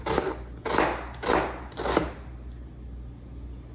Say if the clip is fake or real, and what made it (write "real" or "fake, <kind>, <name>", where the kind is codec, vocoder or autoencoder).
real